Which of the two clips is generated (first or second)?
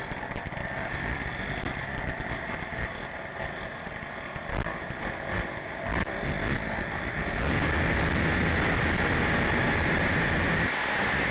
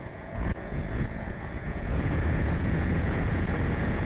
second